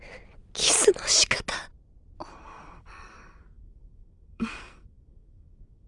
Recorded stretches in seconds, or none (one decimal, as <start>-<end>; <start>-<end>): 0.0-2.3